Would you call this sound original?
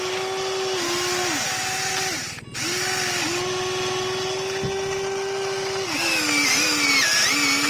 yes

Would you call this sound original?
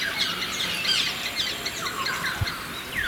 yes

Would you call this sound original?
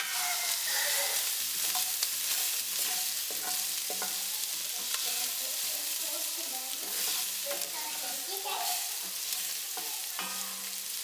yes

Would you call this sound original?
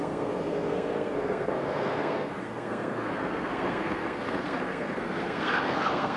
no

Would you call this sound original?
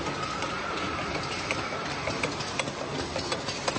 yes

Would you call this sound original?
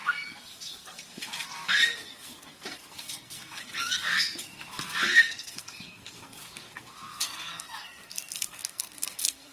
no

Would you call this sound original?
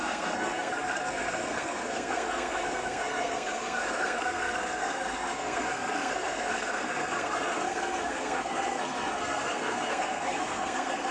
no